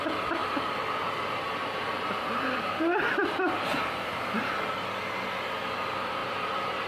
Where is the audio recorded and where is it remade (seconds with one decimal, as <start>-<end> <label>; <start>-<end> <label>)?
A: 0.0-0.4 recorded; 0.4-4.5 remade; 4.5-6.2 recorded; 6.2-6.9 remade